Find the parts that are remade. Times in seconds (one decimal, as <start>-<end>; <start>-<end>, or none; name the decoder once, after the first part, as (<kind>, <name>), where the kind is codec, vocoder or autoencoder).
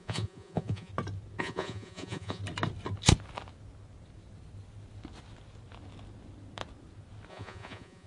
0.0-0.9 (vocoder, Vocos); 1.4-2.4; 7.3-8.1